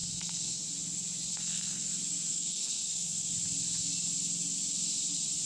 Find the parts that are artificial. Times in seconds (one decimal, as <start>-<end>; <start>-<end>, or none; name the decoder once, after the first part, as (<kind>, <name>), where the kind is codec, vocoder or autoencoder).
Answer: 0.0-0.6 (codec, SNAC); 1.3-1.9; 2.3-3.3